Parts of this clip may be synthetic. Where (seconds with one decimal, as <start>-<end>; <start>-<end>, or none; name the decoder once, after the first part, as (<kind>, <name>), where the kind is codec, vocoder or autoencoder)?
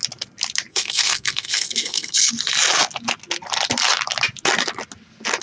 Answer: 0.7-2.3 (codec, SNAC)